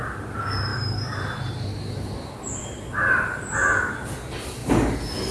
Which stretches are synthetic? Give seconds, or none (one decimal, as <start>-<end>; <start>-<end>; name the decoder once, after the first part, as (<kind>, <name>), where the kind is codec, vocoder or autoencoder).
none